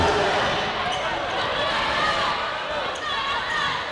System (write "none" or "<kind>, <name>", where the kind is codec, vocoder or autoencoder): none